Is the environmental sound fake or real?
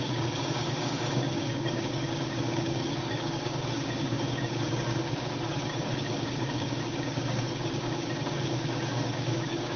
fake